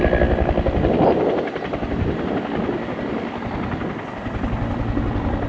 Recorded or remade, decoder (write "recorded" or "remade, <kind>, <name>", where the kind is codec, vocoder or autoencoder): recorded